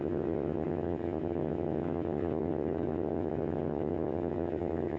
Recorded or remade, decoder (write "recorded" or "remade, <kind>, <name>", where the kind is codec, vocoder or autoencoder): remade, vocoder, HiFi-GAN